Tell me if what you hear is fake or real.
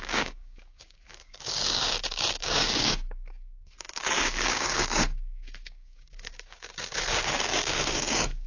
fake